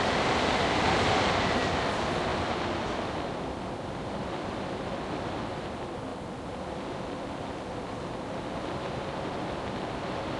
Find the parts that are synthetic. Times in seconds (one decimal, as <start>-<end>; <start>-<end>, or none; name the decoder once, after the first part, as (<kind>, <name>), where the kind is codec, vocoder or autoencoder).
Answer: none